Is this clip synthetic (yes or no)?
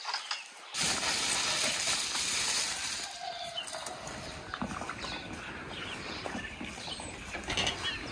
no